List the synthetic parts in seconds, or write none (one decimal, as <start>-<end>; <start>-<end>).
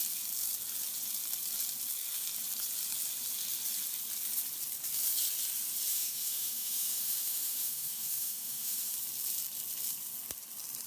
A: 5.9-8.9